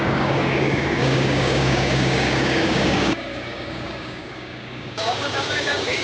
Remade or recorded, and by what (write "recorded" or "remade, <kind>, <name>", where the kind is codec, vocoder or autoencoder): remade, codec, DAC